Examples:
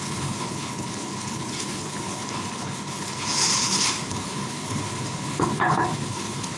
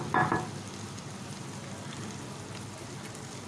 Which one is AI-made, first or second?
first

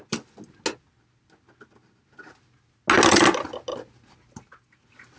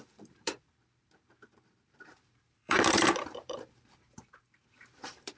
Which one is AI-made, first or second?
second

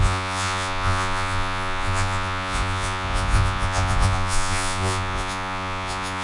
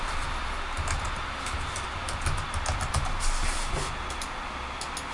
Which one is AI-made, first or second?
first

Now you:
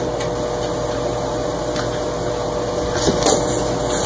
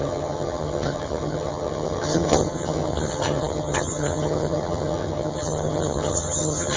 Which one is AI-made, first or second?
second